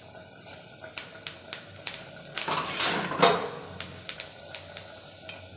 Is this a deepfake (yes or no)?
no